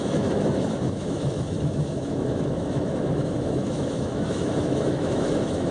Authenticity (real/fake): fake